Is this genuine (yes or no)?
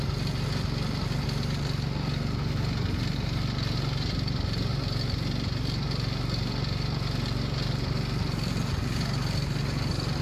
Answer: yes